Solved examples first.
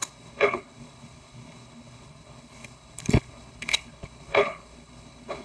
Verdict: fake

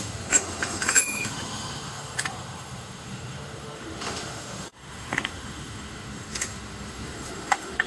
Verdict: fake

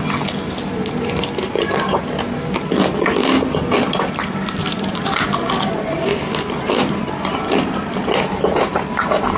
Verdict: fake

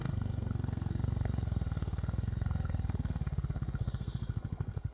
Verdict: fake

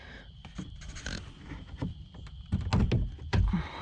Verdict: real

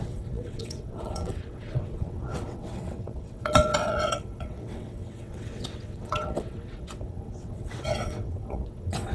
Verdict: fake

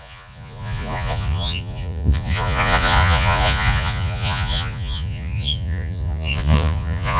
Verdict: fake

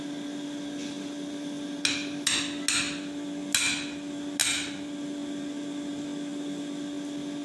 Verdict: real